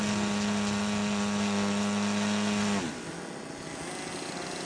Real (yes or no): yes